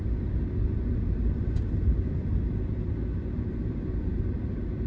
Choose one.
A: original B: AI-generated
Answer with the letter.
A